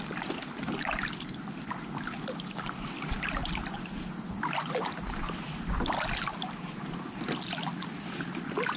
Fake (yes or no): no